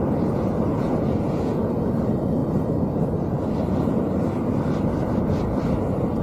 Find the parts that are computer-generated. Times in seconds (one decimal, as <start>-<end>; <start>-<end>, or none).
0.7-1.6